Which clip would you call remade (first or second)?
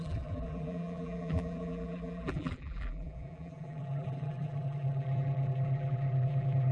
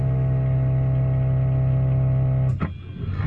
first